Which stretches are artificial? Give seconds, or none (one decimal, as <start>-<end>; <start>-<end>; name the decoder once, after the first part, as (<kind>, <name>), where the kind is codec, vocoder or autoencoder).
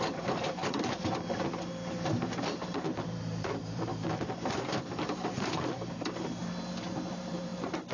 0.0-0.7 (vocoder, BigVGAN v2); 1.3-3.9; 4.5-6.4; 7.1-7.9